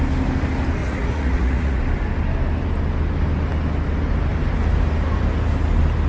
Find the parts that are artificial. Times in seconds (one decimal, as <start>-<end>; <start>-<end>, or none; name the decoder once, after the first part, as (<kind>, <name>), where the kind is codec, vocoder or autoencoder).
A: 0.8-1.8 (vocoder, Vocos)